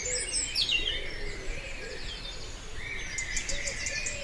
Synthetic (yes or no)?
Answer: no